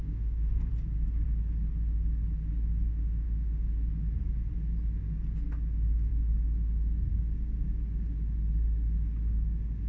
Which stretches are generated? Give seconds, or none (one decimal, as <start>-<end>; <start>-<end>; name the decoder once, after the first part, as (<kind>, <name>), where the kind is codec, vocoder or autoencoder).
0.0-0.7 (autoencoder, DAC-VAE); 2.9-3.7